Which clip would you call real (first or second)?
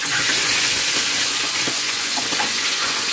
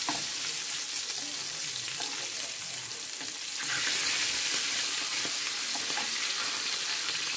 second